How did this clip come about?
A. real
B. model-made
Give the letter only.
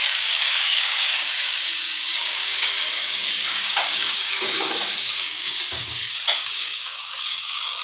B